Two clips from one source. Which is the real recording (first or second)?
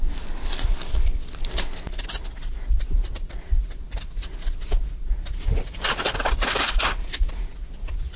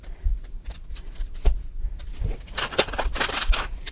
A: first